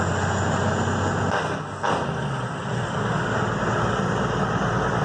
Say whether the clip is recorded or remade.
recorded